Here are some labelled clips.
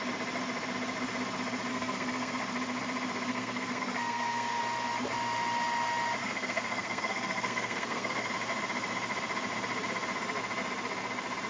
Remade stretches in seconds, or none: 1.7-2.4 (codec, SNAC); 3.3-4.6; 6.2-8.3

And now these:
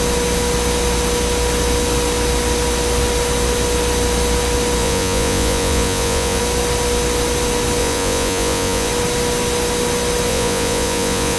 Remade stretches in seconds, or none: 4.8-6.4 (vocoder, Vocos); 7.8-8.9; 10.3-11.4

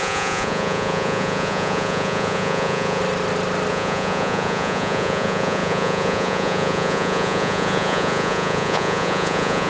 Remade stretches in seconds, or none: 0.0-3.0 (vocoder, Vocos); 3.7-9.7

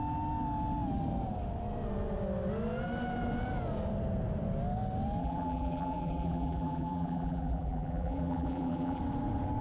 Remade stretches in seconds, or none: 5.2-9.0 (vocoder, BigVGAN v2)